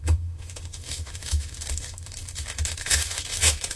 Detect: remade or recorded remade